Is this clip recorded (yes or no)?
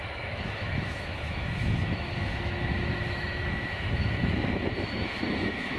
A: no